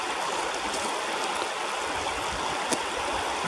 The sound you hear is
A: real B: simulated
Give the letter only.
A